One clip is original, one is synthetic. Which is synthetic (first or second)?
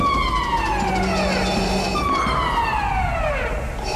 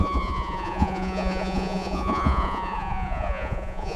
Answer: second